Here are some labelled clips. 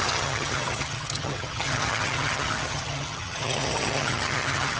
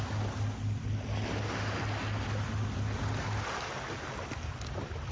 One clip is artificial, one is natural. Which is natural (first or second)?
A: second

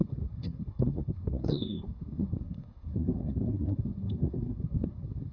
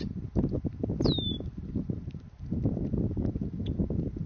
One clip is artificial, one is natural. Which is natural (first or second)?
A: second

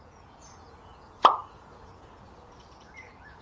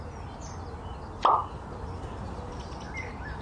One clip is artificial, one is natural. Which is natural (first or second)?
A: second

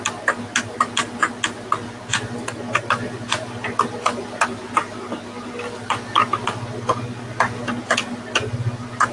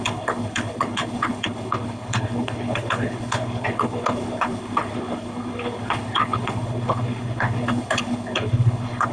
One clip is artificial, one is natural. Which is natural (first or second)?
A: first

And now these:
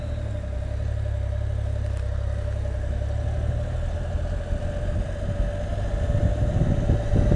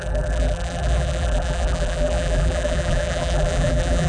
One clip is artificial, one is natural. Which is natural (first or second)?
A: first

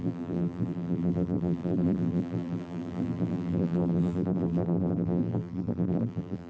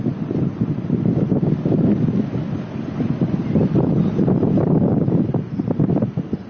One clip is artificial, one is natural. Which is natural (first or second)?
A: second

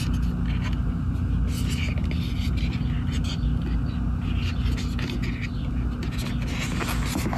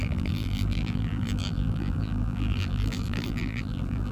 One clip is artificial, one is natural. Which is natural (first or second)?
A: first